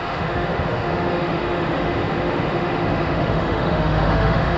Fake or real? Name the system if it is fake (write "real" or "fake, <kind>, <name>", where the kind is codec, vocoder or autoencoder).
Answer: fake, autoencoder, DAC-VAE